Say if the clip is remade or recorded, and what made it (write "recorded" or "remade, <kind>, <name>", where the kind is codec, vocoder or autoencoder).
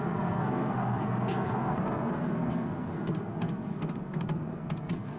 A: remade, codec, SNAC